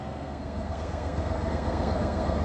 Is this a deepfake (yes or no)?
yes